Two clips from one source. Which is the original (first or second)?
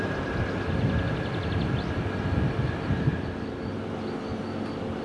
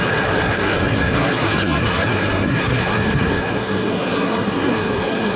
first